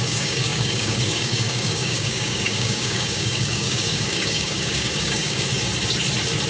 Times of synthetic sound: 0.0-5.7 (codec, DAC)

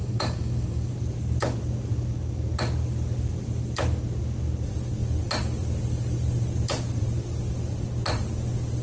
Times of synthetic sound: 0.0-0.9 (codec, DAC)

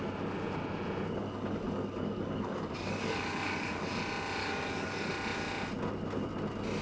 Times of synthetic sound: 1.2-3.9 (codec, DAC); 4.4-5.1

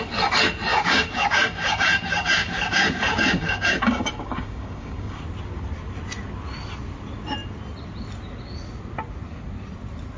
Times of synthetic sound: 0.7-5.2 (codec, DAC)

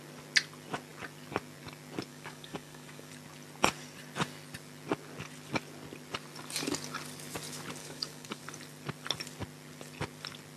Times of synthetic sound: 2.1-3.1 (codec, DAC); 7.8-8.4

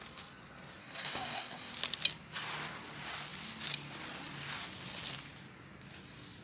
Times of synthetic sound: 0.8-1.7 (codec, DAC)

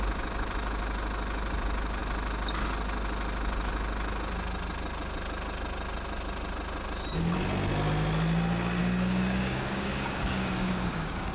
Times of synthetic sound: 8.8-11.3 (codec, DAC)

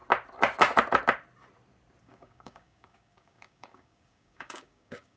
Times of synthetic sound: 2.0-5.2 (codec, DAC)